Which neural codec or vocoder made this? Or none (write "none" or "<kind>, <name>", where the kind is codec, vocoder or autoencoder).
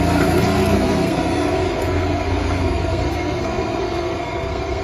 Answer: codec, SNAC